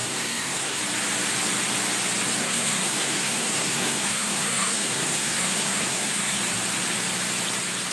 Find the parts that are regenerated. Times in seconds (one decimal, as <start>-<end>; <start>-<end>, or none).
0.0-0.8; 2.4-6.4